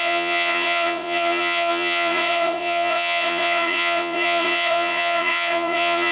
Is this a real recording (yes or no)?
no